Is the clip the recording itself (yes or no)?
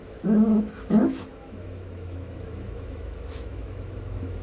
no